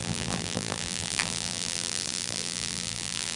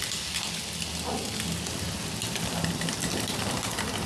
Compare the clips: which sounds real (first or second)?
second